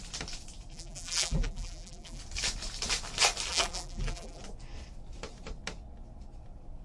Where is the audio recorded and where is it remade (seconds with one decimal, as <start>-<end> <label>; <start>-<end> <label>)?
0.0-0.7 recorded; 0.7-2.2 remade; 2.2-3.5 recorded; 3.5-4.4 remade; 4.4-6.8 recorded